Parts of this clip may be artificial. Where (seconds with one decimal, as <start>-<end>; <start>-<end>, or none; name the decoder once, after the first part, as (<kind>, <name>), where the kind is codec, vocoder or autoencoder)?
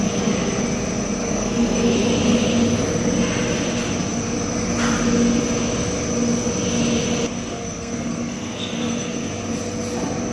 1.2-1.9 (codec, SNAC); 7.5-9.3